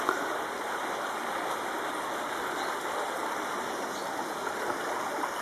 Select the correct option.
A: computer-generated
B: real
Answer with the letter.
B